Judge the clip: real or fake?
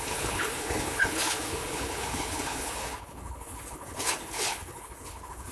fake